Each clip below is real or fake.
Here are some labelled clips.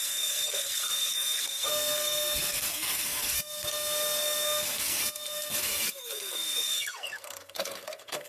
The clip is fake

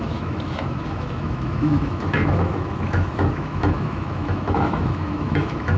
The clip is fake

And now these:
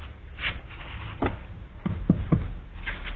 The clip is real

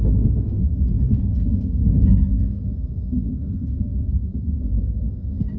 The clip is fake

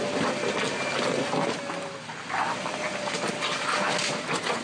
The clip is real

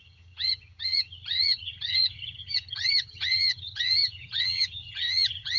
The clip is fake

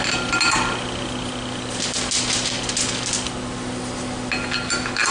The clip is real